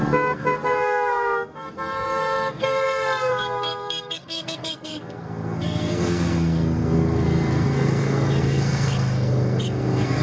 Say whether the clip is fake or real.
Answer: fake